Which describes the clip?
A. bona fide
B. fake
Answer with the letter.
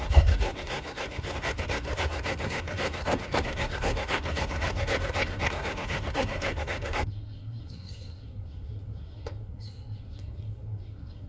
B